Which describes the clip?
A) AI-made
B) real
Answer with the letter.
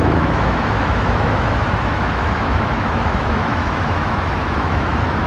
A